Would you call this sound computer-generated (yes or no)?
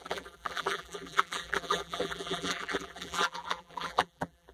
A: yes